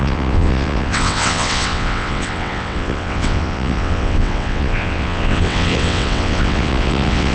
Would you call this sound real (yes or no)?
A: no